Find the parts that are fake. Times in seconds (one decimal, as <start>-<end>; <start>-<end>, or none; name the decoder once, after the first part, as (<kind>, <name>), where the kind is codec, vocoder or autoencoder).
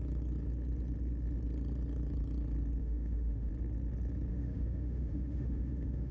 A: 2.8-3.5 (autoencoder, DAC-VAE); 4.3-6.1